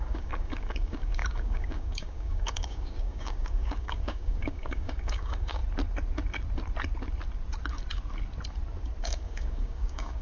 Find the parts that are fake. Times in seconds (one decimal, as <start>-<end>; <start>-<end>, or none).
0.0-5.6; 9.0-10.2